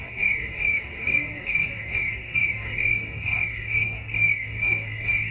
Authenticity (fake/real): fake